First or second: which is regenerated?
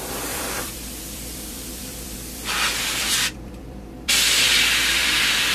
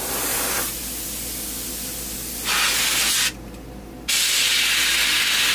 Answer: first